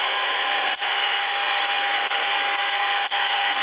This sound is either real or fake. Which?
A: fake